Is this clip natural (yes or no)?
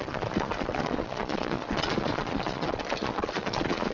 no